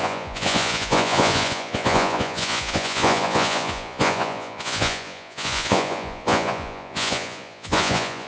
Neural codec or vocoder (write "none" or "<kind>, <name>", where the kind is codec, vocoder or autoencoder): vocoder, Vocos